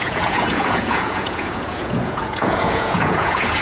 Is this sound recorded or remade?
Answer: remade